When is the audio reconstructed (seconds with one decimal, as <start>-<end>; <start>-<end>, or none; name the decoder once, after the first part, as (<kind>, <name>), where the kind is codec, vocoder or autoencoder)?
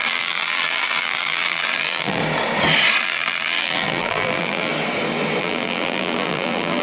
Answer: 0.0-2.2 (vocoder, BigVGAN v2); 3.0-4.7; 5.4-6.8